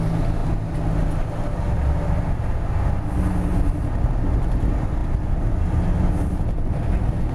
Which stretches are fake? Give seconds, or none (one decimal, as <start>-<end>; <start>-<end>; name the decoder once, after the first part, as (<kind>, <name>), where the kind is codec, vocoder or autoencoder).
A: none